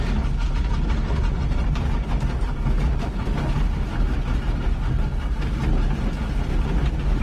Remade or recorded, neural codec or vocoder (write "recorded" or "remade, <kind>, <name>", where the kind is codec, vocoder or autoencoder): recorded